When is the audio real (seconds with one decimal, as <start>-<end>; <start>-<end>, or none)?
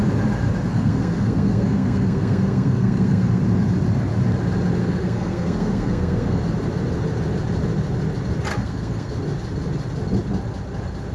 0.0-0.7; 3.4-4.8; 6.4-8.5; 9.1-11.1